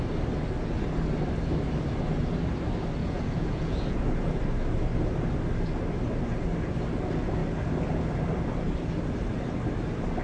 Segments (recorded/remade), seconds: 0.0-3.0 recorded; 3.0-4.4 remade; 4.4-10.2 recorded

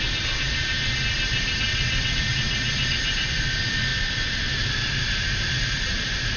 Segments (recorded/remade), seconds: 0.0-1.7 recorded; 1.7-2.2 remade; 2.2-6.4 recorded

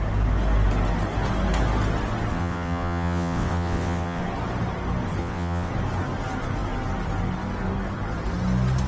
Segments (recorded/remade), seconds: 0.0-2.3 recorded; 2.3-4.2 remade; 4.2-5.2 recorded; 5.2-5.7 remade; 5.7-8.9 recorded

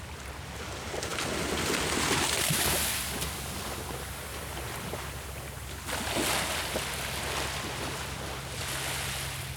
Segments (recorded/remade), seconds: 0.0-9.6 recorded

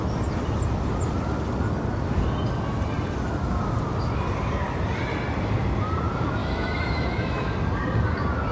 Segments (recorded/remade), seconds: 0.0-6.4 recorded; 6.4-7.5 remade; 7.5-8.5 recorded